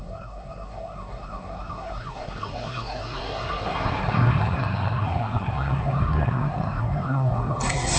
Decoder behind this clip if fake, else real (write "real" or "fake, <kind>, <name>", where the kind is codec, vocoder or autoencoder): fake, codec, SNAC